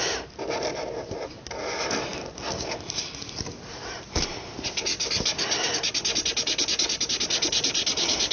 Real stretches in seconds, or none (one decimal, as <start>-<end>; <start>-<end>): 0.0-8.3